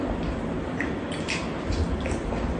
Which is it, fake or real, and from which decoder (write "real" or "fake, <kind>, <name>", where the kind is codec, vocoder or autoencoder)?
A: real